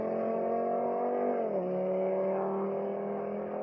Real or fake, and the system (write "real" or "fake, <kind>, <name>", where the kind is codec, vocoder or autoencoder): fake, codec, DAC